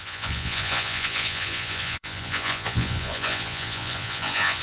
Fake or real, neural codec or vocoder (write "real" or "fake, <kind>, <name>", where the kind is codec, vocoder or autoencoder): fake, vocoder, Vocos